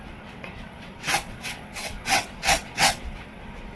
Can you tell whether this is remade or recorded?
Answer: remade